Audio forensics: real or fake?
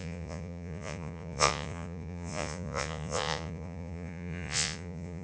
fake